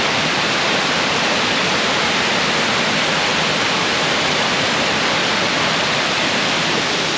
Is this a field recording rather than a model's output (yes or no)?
no